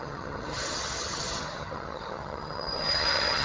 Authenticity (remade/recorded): remade